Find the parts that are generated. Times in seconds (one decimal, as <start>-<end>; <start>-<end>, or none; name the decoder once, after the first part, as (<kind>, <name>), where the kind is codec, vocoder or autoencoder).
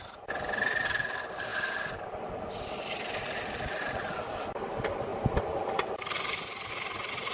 none